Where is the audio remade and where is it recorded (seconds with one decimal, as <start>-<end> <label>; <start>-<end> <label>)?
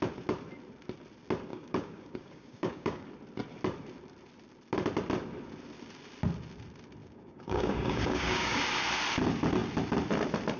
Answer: 0.0-1.5 recorded; 1.5-3.1 remade; 3.1-7.0 recorded; 7.0-8.6 remade; 8.6-10.6 recorded